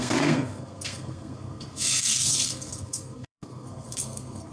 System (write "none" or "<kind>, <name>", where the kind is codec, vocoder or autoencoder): codec, SNAC